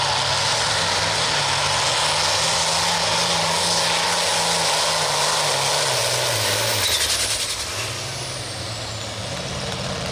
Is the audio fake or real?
real